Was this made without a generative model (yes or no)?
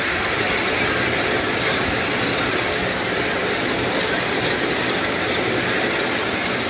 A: yes